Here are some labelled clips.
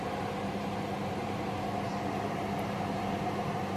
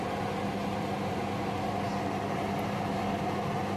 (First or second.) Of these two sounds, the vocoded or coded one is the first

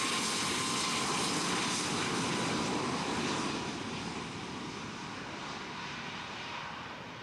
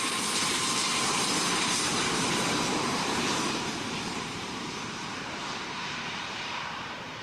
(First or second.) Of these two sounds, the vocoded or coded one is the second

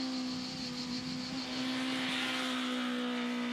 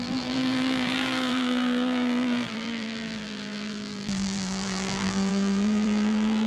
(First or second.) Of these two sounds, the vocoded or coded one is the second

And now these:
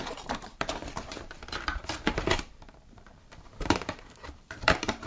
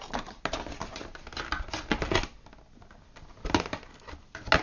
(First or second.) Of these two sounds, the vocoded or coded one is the first